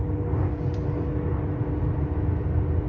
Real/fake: real